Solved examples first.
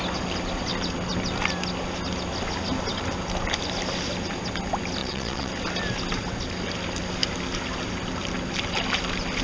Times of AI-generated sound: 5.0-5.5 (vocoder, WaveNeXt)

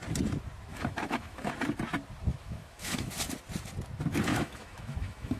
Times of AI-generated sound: 0.7-1.5 (autoencoder, DAC-VAE); 2.3-3.2; 4.3-5.4